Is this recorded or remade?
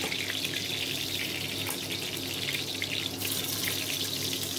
recorded